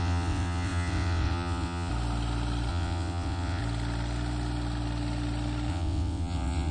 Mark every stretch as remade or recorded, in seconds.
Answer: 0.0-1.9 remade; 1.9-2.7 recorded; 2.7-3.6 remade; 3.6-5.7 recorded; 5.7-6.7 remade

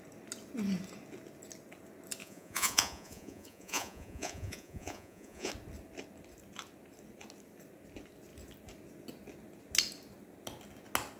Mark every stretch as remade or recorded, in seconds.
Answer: 0.0-2.2 recorded; 2.2-5.5 remade; 5.5-11.2 recorded

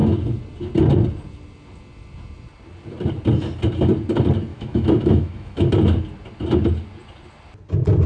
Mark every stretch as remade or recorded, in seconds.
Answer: 0.0-4.5 recorded; 4.5-5.7 remade; 5.7-8.1 recorded

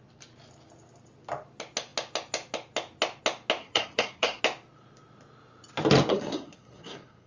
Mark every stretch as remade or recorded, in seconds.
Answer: 0.0-3.6 recorded; 3.6-4.4 remade; 4.4-6.1 recorded; 6.1-7.3 remade

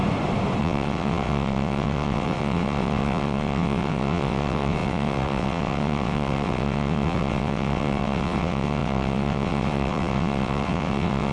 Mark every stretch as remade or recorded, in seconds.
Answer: 0.0-0.6 recorded; 0.6-11.3 remade